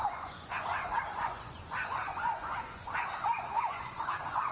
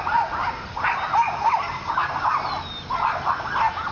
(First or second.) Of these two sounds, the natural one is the second